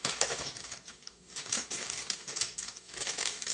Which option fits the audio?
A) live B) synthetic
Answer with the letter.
B